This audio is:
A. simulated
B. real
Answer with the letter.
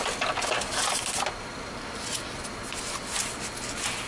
B